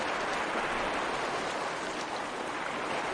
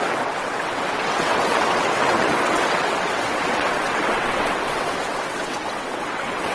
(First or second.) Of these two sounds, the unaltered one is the first